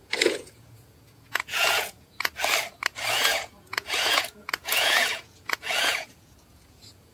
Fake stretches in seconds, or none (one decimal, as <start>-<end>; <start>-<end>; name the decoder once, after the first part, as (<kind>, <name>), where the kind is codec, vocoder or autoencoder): 0.0-2.3 (vocoder, Vocos); 3.1-7.1